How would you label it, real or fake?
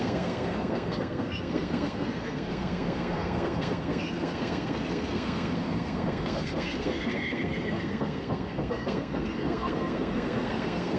fake